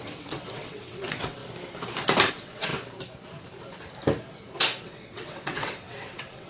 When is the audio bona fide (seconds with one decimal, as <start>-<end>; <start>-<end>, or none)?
1.4-2.3; 2.7-4.8